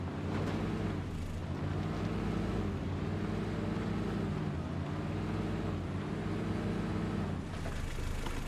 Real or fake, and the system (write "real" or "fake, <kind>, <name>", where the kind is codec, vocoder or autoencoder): real